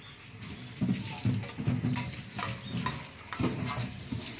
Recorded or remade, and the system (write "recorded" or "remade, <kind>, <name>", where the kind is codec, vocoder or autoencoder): recorded